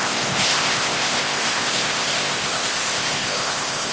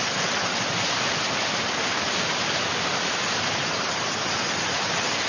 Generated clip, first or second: first